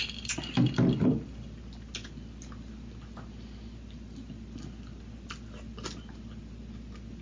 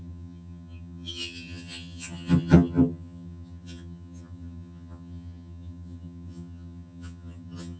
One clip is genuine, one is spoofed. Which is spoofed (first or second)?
second